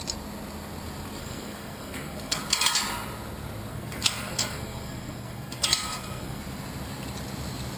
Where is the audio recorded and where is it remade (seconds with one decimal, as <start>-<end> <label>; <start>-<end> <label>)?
0.0-1.2 recorded; 1.2-2.4 remade; 2.4-3.7 recorded; 3.7-6.4 remade; 6.4-7.8 recorded